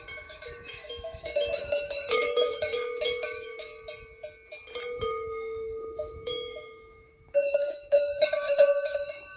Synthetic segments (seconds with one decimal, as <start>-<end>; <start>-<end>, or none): 0.0-3.7; 5.0-9.4